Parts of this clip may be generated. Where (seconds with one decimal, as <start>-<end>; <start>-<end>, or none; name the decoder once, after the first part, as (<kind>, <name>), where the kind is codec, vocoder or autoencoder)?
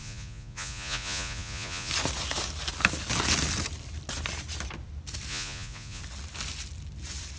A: 0.0-1.9 (vocoder, Vocos); 5.3-6.0